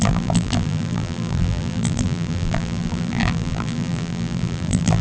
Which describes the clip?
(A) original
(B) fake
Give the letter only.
B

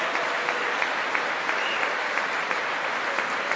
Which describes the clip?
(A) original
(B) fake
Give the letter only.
A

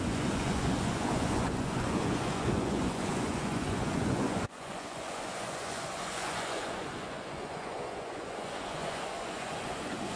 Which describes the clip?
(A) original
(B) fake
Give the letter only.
B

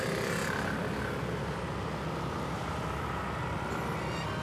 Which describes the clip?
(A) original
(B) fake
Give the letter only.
A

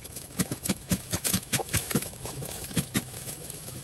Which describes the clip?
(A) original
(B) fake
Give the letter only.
B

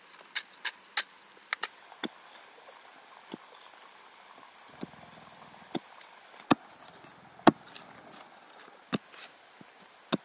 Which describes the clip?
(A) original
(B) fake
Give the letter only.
A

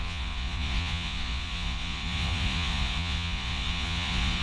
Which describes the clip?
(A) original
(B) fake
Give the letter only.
B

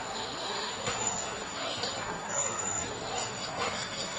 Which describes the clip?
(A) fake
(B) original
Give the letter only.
A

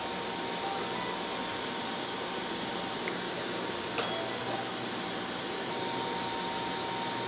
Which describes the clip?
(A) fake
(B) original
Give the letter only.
B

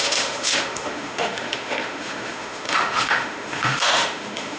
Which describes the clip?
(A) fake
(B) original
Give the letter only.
A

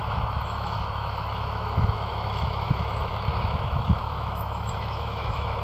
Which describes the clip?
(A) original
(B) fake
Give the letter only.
B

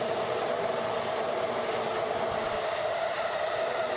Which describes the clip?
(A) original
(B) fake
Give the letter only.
A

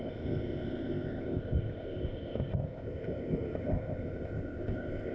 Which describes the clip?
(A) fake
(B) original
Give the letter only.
A